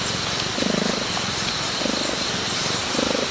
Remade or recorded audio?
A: recorded